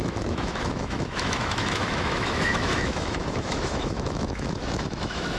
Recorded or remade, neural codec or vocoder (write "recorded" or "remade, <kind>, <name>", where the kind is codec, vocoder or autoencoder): remade, autoencoder, DAC-VAE